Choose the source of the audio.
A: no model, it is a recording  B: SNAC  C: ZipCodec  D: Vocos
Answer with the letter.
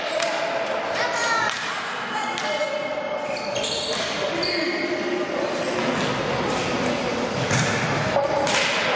A